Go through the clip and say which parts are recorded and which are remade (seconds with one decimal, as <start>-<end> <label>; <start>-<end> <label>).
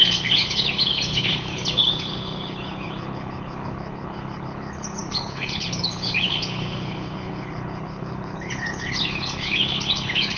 0.0-10.4 remade